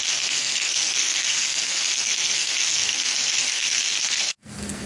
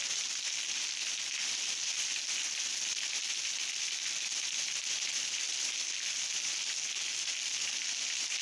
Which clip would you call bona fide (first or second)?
second